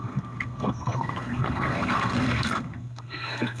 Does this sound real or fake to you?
fake